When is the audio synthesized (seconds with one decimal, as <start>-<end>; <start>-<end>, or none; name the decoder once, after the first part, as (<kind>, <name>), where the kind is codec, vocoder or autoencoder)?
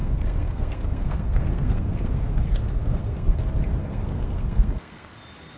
0.0-3.4 (codec, SNAC); 3.8-5.1